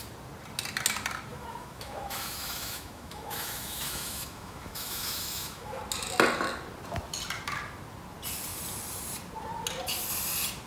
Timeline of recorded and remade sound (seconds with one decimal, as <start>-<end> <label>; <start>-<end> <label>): 0.0-1.3 recorded; 1.3-5.8 remade; 5.8-10.7 recorded